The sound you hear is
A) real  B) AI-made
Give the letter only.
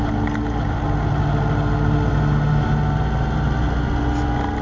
A